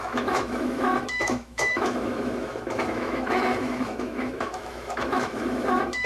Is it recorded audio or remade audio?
remade